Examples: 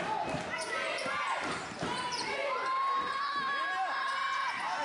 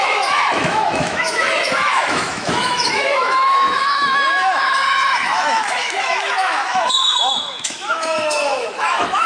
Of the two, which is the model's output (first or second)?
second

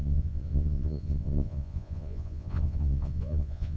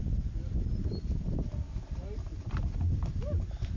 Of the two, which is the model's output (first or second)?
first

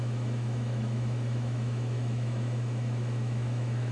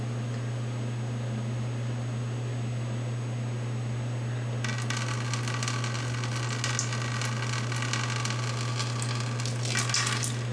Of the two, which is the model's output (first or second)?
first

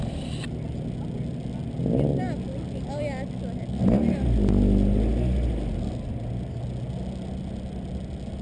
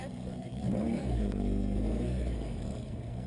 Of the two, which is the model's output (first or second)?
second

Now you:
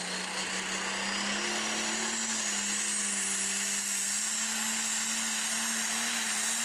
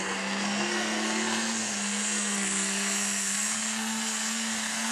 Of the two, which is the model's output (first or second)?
second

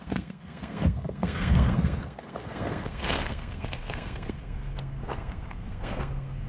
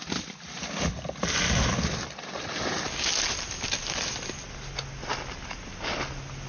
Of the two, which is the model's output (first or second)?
first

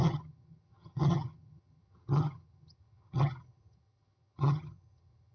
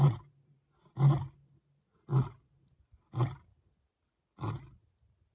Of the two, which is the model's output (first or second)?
first